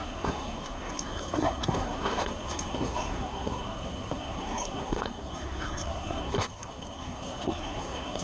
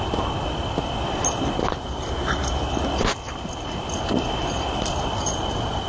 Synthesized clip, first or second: first